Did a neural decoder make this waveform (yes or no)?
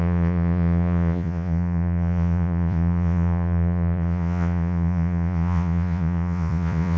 yes